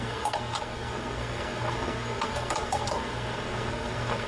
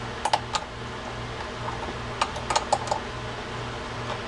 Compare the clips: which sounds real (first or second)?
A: second